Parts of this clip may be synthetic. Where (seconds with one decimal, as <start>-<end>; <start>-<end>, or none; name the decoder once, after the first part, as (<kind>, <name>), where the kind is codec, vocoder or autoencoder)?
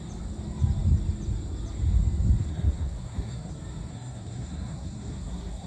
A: 2.5-3.5 (codec, SNAC); 3.9-5.7